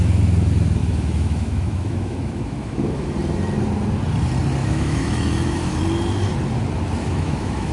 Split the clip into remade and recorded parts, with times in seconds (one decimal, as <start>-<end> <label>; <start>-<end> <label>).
0.0-0.8 recorded; 0.8-3.1 remade; 3.1-4.6 recorded; 4.6-5.8 remade; 5.8-7.0 recorded; 7.0-7.7 remade